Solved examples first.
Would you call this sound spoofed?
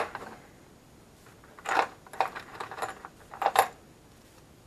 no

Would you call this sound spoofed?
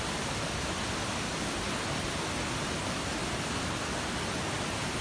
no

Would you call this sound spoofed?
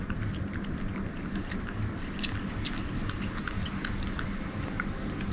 no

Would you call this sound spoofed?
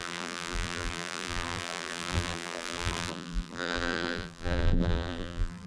yes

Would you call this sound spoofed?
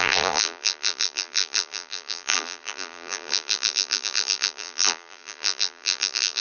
yes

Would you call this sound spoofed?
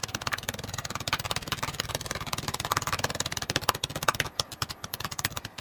yes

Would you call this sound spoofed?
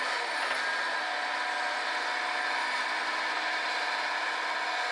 no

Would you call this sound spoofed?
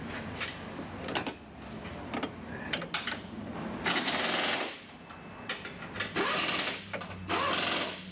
no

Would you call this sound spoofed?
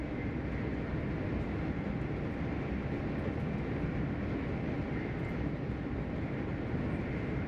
no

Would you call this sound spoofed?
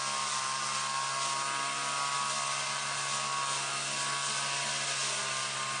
no